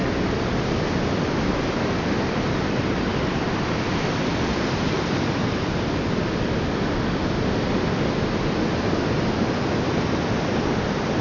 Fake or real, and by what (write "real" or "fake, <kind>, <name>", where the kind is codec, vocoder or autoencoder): real